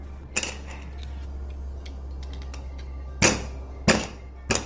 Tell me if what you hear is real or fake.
real